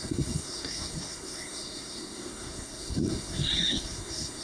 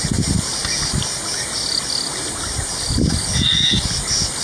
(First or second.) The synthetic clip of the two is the first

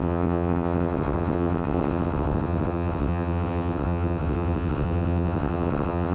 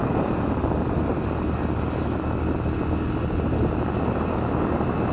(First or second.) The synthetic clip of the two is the first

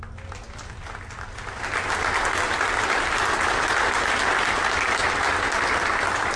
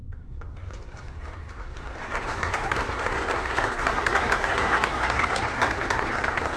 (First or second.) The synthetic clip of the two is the second